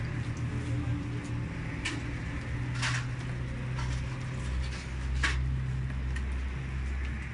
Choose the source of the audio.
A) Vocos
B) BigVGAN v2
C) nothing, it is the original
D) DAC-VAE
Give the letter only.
C